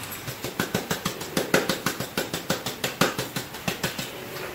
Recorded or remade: recorded